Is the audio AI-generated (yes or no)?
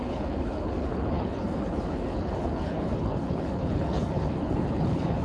yes